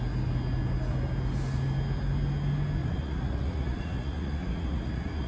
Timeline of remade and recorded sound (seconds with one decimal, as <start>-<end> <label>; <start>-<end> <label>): 0.0-2.8 recorded; 2.8-5.3 remade